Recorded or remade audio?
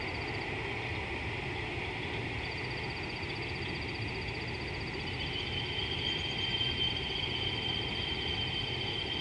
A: recorded